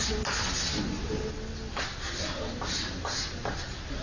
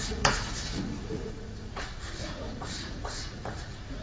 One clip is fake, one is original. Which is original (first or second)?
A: first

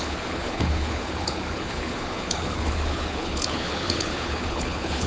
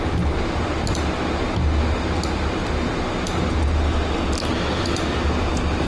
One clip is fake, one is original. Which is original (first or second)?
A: second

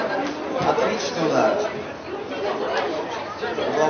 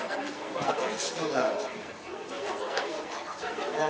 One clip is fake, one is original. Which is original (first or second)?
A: first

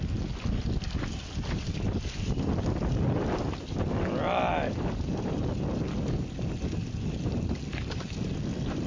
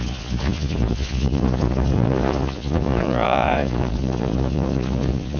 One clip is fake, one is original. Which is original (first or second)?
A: first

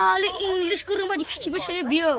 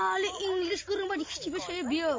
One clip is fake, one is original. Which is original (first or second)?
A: second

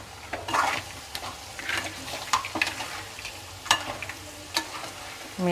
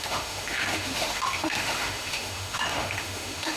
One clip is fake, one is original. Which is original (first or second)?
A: first